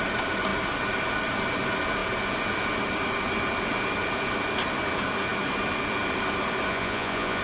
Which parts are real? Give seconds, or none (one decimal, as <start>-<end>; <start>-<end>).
0.0-6.7